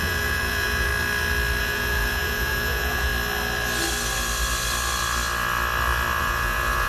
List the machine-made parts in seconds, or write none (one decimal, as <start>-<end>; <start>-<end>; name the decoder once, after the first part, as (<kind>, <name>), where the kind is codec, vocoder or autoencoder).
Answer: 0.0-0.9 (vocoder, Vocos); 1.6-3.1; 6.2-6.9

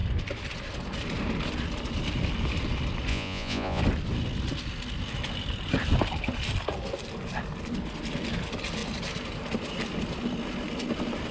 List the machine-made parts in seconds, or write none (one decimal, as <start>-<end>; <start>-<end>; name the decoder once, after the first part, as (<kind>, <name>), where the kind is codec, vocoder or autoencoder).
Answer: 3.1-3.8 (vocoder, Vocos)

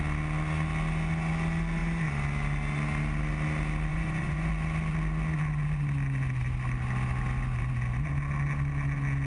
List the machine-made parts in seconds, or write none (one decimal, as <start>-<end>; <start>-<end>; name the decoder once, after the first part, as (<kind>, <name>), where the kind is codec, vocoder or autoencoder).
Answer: 3.9-4.5 (vocoder, Vocos)

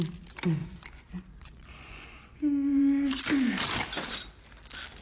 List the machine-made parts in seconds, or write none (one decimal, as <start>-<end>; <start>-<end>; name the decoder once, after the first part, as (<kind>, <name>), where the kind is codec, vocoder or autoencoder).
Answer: 0.6-3.2 (vocoder, Vocos)

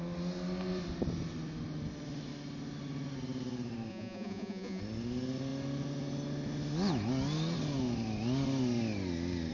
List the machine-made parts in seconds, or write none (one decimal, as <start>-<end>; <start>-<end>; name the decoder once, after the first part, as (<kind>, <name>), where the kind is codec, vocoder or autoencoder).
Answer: 3.9-4.8 (vocoder, Vocos)